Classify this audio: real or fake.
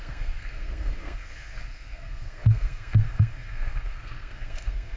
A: fake